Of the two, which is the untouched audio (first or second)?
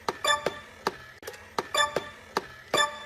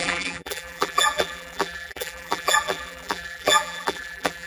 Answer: first